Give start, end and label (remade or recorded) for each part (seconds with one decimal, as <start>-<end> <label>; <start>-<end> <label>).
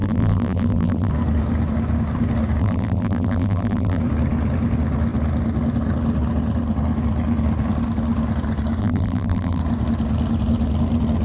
0.0-1.1 remade; 1.1-2.6 recorded; 2.6-4.0 remade; 4.0-8.8 recorded; 8.8-9.6 remade; 9.6-11.2 recorded